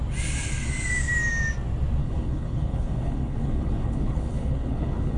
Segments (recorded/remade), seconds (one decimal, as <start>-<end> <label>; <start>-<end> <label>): 0.0-2.0 recorded; 2.0-5.2 remade